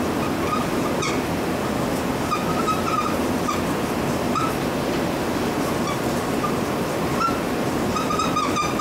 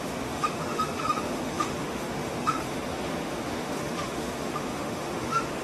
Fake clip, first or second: second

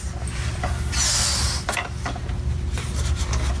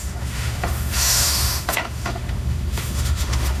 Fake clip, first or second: second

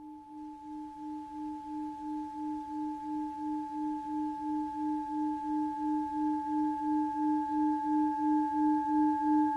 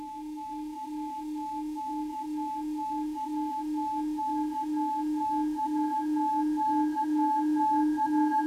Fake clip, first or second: second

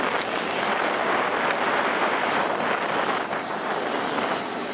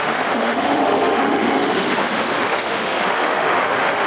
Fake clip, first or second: second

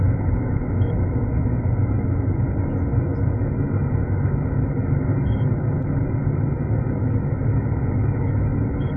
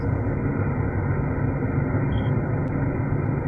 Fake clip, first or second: first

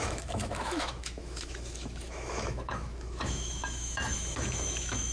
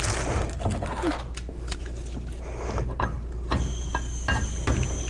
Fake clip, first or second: first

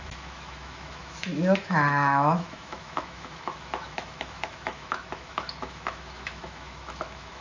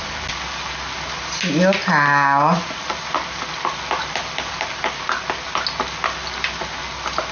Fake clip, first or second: first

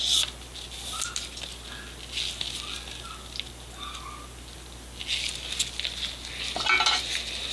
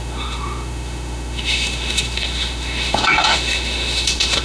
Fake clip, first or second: second